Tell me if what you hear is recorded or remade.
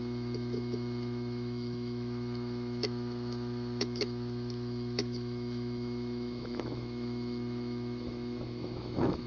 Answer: remade